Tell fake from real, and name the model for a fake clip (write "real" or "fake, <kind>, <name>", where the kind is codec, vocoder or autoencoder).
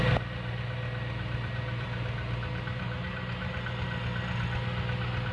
real